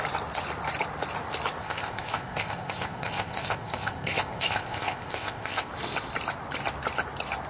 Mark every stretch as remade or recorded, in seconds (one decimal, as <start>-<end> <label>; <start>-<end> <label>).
0.0-1.6 recorded; 1.6-5.7 remade; 5.7-7.5 recorded